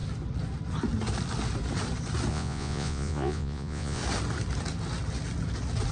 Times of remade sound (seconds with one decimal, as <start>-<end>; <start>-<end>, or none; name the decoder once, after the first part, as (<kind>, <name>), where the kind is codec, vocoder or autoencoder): 2.3-4.0 (vocoder, Vocos)